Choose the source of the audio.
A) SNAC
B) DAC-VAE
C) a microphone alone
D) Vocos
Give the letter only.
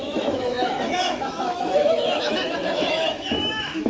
B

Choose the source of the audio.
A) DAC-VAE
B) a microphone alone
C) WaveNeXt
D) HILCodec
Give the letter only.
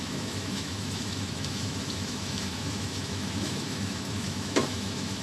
A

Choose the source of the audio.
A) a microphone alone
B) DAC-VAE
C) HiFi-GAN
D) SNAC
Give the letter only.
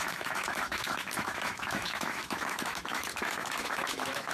B